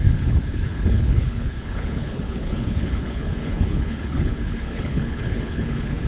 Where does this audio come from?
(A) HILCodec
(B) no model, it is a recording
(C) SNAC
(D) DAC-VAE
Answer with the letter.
A